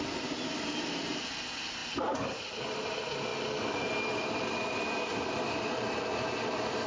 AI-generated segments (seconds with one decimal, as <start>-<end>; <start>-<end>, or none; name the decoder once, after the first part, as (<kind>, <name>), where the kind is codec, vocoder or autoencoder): none